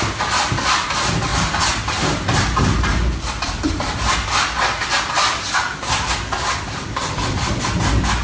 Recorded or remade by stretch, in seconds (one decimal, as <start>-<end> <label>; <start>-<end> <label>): 0.0-8.2 recorded